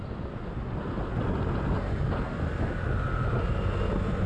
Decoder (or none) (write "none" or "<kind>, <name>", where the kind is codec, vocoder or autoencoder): none